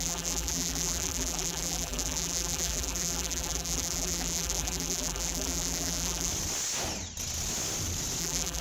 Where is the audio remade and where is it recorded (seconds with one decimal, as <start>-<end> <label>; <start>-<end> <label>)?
0.0-6.3 remade; 6.3-8.2 recorded; 8.2-8.6 remade